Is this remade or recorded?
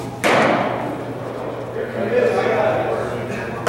recorded